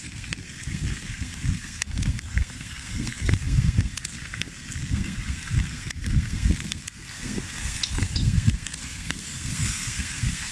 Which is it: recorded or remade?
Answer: remade